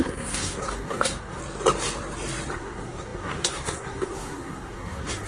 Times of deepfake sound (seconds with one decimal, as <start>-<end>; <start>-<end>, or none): 0.0-1.4; 2.5-5.3